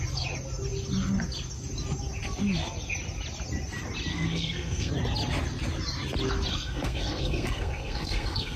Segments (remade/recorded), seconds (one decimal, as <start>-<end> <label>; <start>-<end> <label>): 0.0-4.1 recorded; 4.1-4.9 remade; 4.9-6.5 recorded; 6.5-8.6 remade